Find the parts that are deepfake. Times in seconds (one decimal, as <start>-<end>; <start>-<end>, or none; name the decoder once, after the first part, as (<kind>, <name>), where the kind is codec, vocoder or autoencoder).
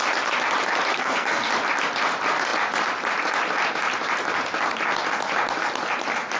0.9-1.5 (codec, SNAC)